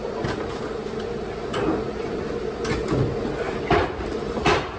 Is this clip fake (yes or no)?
no